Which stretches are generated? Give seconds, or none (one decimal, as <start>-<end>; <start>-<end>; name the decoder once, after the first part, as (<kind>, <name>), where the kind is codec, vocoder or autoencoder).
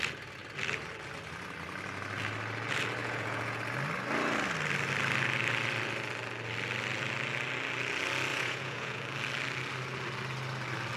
3.0-3.6 (vocoder, Vocos); 8.3-9.0